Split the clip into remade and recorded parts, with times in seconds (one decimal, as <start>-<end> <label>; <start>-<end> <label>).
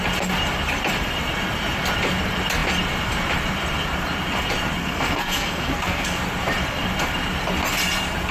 0.0-4.8 recorded; 4.8-6.2 remade; 6.2-8.3 recorded